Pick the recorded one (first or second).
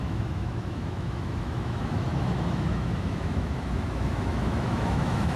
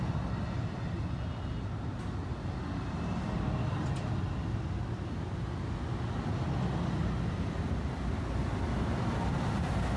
second